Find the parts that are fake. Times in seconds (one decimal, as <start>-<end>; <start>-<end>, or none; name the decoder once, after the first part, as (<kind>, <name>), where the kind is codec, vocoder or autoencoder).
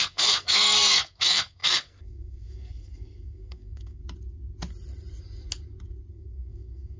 0.0-4.0 (codec, SNAC); 6.1-7.0